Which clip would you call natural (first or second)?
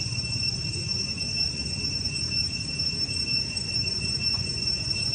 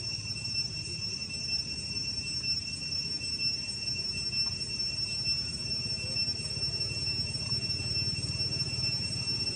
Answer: second